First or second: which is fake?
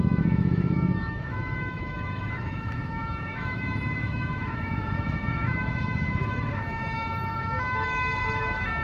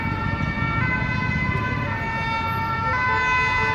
first